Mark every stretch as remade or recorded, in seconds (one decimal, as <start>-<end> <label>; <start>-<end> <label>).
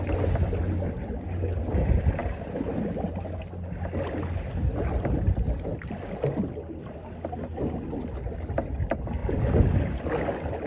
0.0-10.7 recorded